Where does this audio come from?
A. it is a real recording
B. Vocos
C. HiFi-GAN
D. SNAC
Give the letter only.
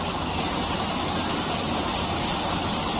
A